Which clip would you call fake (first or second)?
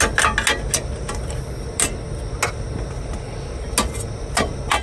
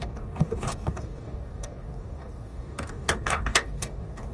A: second